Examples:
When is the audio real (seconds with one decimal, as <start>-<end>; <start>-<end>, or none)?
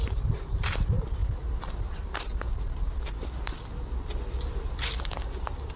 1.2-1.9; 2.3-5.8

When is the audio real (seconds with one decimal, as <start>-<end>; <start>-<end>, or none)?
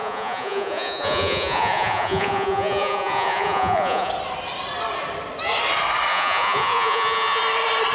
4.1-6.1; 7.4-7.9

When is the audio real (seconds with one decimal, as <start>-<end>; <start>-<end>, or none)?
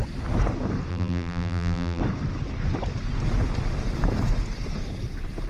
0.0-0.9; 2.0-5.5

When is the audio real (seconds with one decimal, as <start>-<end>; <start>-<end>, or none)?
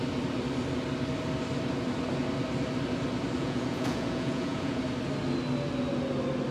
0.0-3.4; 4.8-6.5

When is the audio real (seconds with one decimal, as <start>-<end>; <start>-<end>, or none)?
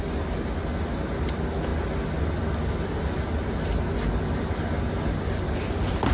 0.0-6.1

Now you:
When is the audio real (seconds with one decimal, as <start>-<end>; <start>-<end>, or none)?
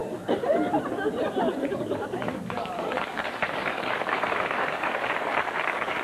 0.0-1.7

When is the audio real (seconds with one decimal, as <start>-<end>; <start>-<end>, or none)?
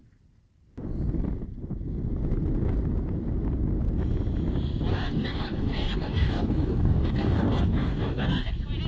0.0-4.9; 8.5-8.9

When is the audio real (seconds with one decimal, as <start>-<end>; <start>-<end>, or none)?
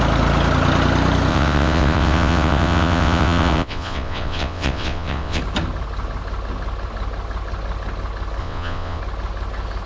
0.0-1.3; 5.4-8.4; 9.0-9.9